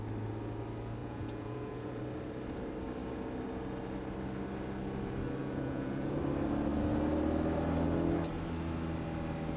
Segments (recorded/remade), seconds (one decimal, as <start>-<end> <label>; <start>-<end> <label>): 0.0-1.0 recorded; 1.0-2.0 remade; 2.0-5.4 recorded; 5.4-6.2 remade; 6.2-9.6 recorded

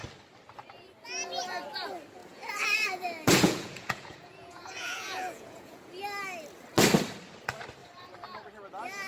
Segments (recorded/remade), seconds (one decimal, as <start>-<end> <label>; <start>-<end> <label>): 0.0-2.2 recorded; 2.2-6.0 remade; 6.0-9.1 recorded

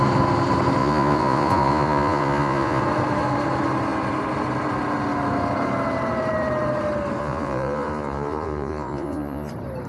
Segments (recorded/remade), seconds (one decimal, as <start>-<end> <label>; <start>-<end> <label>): 0.0-0.8 recorded; 0.8-2.8 remade; 2.8-7.2 recorded; 7.2-9.5 remade; 9.5-9.9 recorded

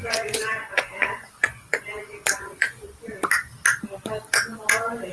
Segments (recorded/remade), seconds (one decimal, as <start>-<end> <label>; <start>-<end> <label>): 0.0-3.1 remade; 3.1-5.1 recorded

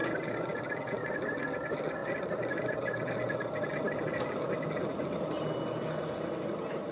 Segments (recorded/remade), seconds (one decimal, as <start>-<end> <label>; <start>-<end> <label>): 0.0-6.9 recorded

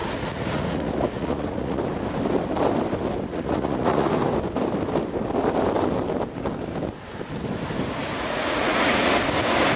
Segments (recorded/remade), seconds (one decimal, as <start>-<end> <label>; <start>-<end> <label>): 0.0-1.8 remade; 1.8-3.3 recorded; 3.3-4.1 remade; 4.1-8.0 recorded; 8.0-9.1 remade; 9.1-9.8 recorded

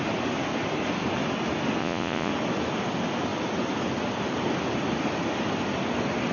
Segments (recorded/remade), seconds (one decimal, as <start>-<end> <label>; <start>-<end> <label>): 0.0-1.8 recorded; 1.8-2.3 remade; 2.3-6.3 recorded